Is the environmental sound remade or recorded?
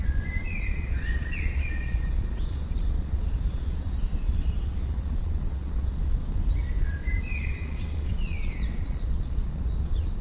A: remade